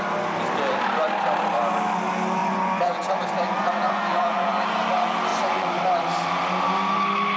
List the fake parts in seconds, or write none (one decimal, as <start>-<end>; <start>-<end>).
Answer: 2.4-4.6; 5.3-5.8